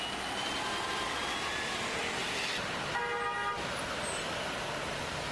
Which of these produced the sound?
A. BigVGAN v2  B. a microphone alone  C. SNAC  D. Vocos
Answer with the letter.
B